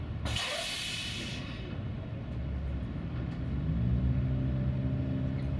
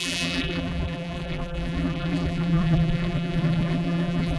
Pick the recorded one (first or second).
first